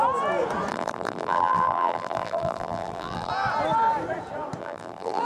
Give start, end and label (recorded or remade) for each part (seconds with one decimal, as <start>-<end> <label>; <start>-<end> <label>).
0.0-0.7 recorded; 0.7-3.3 remade; 3.3-4.6 recorded; 4.6-5.2 remade